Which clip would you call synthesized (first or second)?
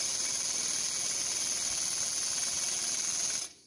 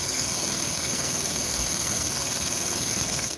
second